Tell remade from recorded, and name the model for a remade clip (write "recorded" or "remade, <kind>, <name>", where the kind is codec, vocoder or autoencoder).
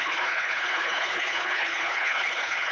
remade, codec, HILCodec